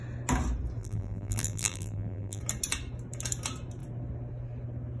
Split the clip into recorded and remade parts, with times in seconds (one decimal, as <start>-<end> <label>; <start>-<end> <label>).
0.0-0.8 recorded; 0.8-2.4 remade; 2.4-5.0 recorded